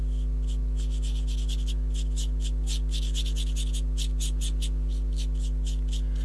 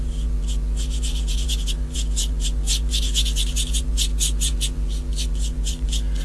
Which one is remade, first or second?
second